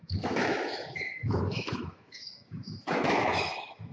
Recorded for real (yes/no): no